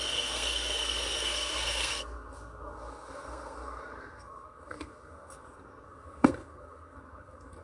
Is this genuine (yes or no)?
no